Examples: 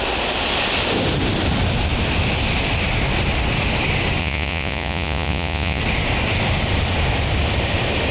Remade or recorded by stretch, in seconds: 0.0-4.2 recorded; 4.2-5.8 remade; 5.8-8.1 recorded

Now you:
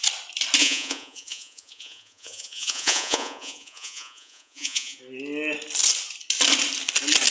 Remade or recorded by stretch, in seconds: 0.0-0.6 recorded; 0.6-5.0 remade; 5.0-7.3 recorded

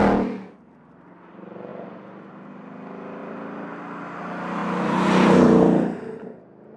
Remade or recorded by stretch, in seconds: 0.0-4.6 remade; 4.6-6.8 recorded

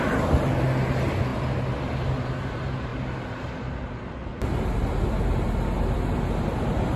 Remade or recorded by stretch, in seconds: 0.0-7.0 recorded

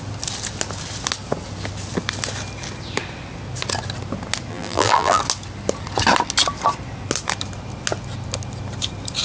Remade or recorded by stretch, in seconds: 0.0-4.5 recorded; 4.5-5.2 remade; 5.2-9.2 recorded